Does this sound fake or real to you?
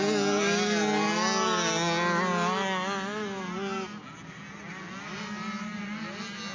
real